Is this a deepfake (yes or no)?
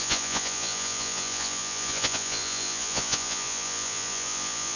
yes